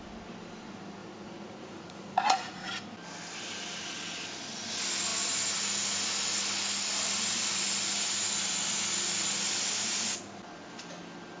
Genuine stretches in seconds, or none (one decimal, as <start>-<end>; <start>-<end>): 0.0-1.0; 2.8-11.4